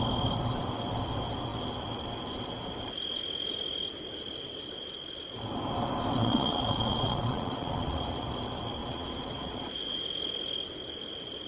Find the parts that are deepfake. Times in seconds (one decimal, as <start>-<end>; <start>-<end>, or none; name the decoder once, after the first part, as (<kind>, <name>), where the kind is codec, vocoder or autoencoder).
6.2-8.3 (vocoder, Vocos); 8.8-10.0